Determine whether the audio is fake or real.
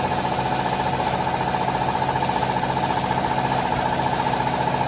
real